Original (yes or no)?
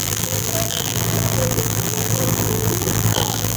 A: no